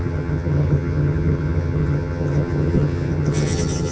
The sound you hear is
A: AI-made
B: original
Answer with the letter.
A